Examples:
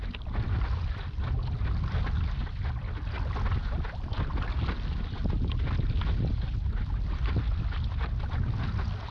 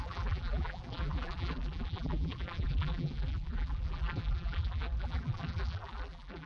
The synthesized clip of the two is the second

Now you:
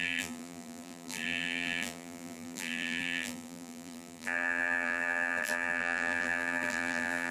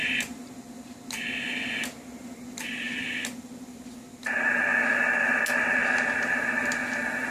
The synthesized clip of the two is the first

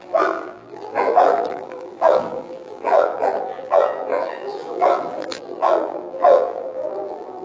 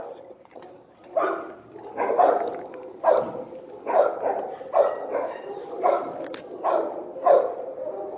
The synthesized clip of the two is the first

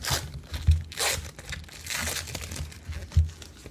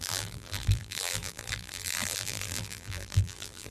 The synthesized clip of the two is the second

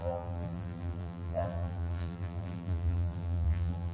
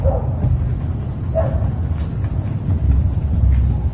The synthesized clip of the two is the first